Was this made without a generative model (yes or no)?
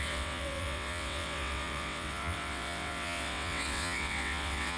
no